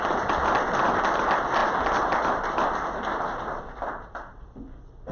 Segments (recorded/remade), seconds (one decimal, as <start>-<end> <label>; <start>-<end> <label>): 0.0-5.1 recorded